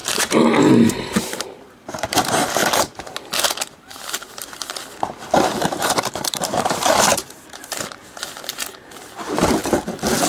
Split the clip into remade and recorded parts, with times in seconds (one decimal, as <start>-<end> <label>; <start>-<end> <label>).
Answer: 0.0-2.6 remade; 2.6-5.7 recorded; 5.7-8.0 remade; 8.0-9.2 recorded; 9.2-9.6 remade; 9.6-10.3 recorded